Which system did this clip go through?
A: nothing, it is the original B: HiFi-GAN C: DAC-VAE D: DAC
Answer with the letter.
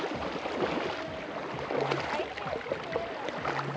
A